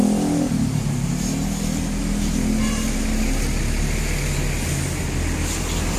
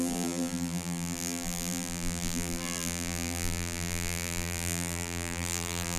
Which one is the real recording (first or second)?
first